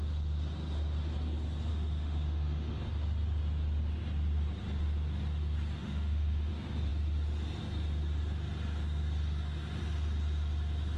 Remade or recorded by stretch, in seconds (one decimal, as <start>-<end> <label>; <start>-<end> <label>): 0.0-1.7 recorded; 1.7-2.8 remade; 2.8-5.8 recorded; 5.8-6.5 remade; 6.5-11.0 recorded